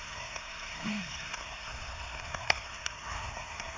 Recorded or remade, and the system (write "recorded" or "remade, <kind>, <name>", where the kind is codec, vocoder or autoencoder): remade, codec, SNAC